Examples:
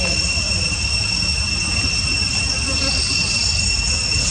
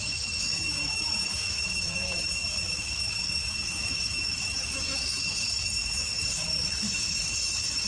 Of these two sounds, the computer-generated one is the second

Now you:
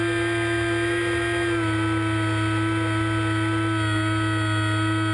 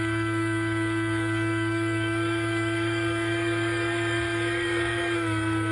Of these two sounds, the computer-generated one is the second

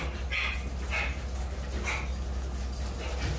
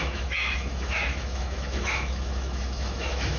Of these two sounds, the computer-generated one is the second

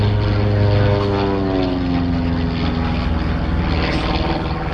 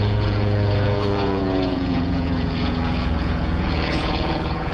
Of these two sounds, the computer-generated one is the second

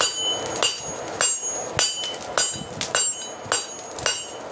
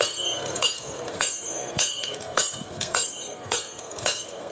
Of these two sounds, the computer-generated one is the second